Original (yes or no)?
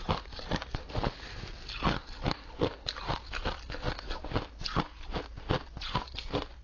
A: yes